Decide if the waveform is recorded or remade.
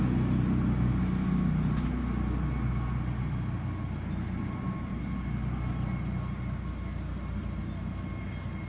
recorded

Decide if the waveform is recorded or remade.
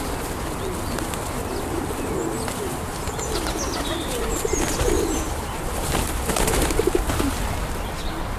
recorded